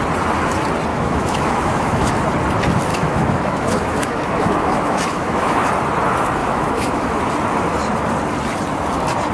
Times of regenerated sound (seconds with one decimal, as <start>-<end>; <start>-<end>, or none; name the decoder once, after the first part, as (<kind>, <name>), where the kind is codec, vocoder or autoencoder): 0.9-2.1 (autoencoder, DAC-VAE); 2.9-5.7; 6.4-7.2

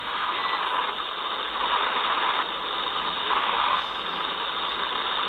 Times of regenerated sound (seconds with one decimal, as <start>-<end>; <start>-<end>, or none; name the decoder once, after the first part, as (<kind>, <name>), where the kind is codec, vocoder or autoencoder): 0.0-0.4 (autoencoder, DAC-VAE); 3.2-3.9

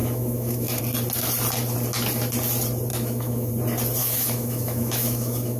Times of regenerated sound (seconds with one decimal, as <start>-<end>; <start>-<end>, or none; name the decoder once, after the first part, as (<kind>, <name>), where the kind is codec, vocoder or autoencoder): 0.0-0.8 (autoencoder, DAC-VAE); 2.9-3.5; 4.0-5.6

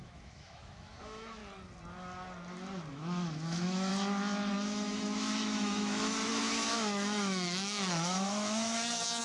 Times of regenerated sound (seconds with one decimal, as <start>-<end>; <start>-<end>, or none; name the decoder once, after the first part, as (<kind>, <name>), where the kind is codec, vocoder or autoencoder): 0.0-1.4 (autoencoder, DAC-VAE); 2.9-3.9; 4.5-9.2

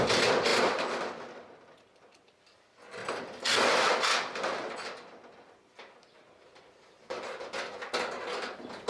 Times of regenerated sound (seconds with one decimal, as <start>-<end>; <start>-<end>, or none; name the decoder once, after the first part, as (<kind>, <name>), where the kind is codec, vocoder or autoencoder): none

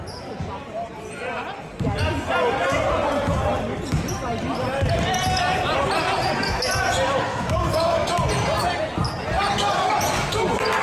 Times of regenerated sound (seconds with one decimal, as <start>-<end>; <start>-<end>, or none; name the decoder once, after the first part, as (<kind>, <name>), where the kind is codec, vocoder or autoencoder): 7.3-8.1 (autoencoder, DAC-VAE)

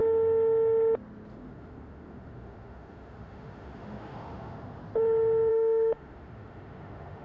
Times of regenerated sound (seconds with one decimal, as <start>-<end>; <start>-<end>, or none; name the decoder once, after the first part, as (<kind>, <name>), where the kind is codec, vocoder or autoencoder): 1.3-4.8 (autoencoder, DAC-VAE); 5.5-7.2